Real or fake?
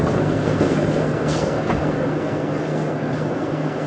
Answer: fake